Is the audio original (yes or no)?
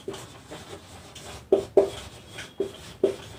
yes